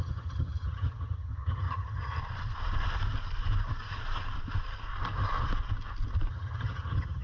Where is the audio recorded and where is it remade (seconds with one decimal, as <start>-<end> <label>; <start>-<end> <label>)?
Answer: 0.0-2.2 remade; 2.2-6.3 recorded; 6.3-7.2 remade